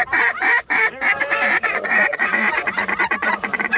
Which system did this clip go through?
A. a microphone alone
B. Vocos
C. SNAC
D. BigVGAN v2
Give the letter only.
B